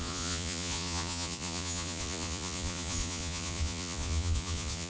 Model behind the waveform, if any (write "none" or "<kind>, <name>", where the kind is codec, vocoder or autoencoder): vocoder, Vocos